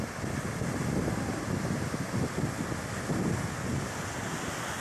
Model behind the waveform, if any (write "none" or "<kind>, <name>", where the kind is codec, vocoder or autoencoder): none